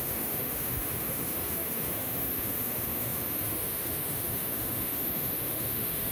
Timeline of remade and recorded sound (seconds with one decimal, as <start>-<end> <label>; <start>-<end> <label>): 0.0-6.1 remade